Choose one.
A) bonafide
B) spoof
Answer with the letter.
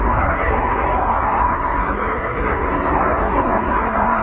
B